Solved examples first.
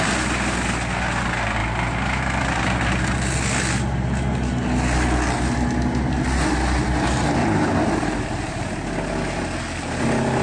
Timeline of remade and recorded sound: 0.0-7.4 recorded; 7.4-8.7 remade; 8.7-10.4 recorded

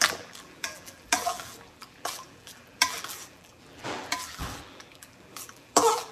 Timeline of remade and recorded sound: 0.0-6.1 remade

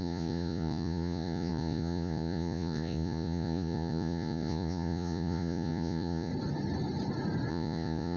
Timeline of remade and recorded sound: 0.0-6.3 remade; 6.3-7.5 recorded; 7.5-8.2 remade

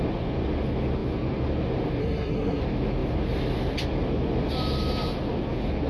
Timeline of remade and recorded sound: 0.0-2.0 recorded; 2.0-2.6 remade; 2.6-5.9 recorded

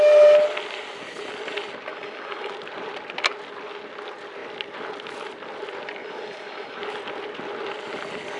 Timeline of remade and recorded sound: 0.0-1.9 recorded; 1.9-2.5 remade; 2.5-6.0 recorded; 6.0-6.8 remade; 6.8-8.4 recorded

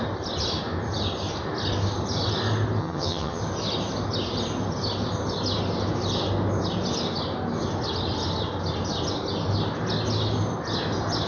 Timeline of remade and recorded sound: 0.0-2.8 recorded; 2.8-3.4 remade; 3.4-11.3 recorded

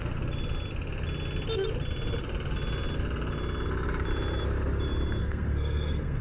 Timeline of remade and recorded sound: 0.0-5.2 recorded; 5.2-6.2 remade